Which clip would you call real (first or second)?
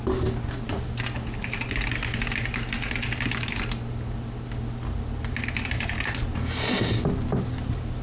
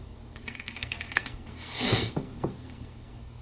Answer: first